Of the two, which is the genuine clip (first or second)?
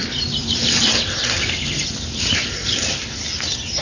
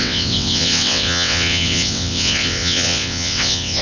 first